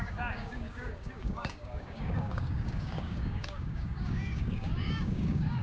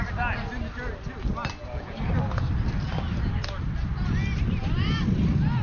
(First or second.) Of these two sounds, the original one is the second